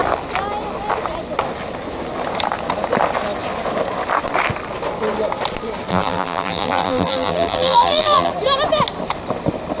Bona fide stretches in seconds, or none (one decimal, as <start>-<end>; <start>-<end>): 0.0-5.9; 8.3-9.8